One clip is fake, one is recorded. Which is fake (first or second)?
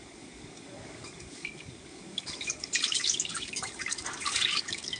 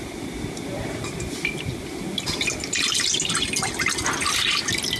first